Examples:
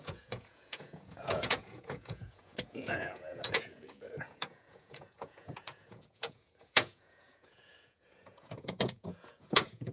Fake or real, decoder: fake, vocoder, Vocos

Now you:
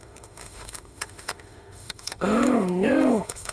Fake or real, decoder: fake, autoencoder, DAC-VAE